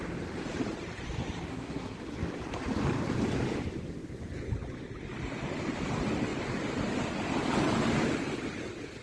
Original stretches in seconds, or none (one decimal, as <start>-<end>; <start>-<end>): 0.0-1.5; 2.0-9.0